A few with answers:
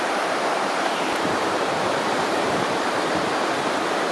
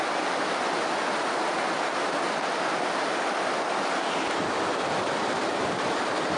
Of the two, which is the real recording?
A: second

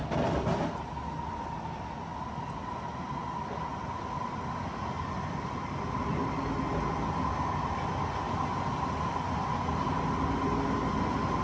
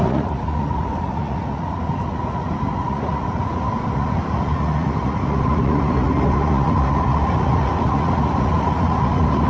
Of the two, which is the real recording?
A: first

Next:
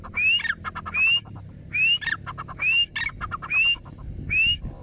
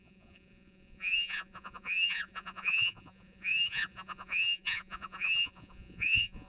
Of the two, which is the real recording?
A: first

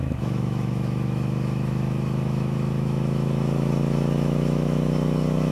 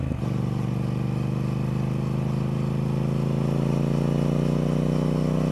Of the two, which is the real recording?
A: second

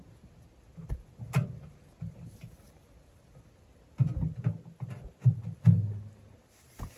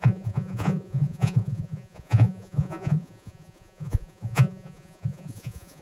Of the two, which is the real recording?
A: first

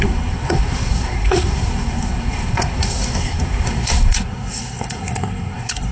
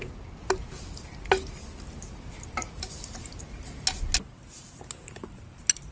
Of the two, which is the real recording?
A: second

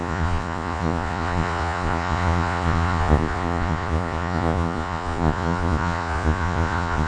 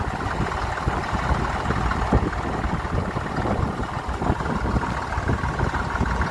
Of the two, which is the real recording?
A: second